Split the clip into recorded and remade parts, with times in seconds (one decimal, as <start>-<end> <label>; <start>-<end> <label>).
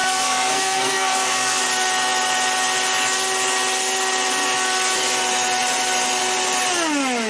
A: 0.0-1.6 remade; 1.6-7.3 recorded